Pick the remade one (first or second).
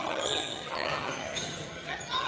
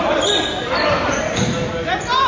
first